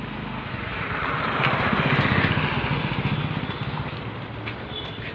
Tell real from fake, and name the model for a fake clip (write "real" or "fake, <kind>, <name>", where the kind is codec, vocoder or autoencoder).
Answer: real